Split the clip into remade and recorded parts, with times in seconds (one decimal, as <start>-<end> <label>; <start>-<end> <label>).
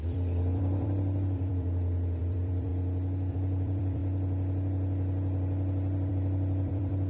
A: 0.0-2.7 remade; 2.7-3.3 recorded; 3.3-4.0 remade; 4.0-6.1 recorded; 6.1-7.1 remade